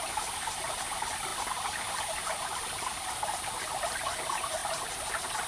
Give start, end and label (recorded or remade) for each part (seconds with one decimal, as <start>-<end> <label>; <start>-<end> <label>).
0.0-5.5 recorded